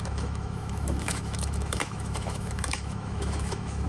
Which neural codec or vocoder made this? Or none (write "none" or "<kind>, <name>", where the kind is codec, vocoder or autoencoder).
autoencoder, DAC-VAE